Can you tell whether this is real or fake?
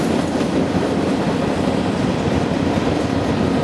real